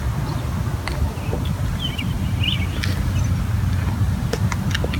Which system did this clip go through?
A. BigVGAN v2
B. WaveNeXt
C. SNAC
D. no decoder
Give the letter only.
D